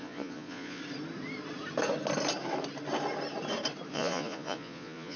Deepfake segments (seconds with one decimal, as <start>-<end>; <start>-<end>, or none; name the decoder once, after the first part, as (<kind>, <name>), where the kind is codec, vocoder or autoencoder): 0.0-0.8 (vocoder, Vocos); 3.9-5.2